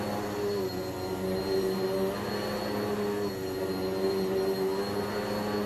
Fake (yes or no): no